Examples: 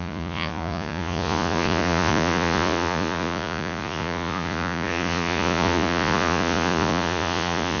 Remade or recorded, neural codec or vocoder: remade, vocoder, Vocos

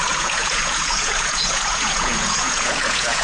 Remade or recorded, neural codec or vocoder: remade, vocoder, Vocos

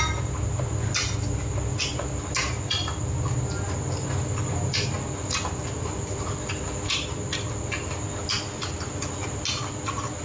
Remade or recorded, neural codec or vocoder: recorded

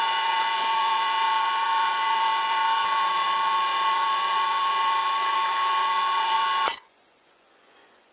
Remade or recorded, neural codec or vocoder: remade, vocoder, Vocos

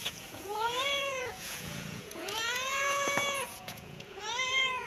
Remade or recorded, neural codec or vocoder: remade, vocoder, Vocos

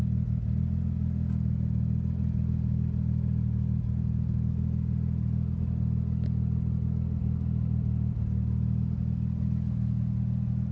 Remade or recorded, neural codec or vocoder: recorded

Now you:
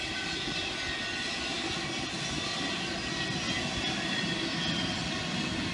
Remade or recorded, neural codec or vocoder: recorded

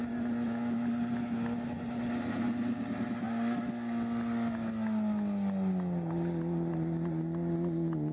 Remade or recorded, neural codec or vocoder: recorded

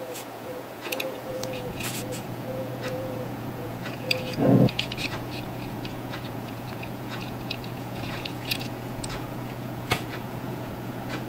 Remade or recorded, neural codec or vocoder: remade, vocoder, Vocos